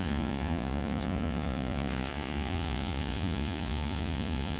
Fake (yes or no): yes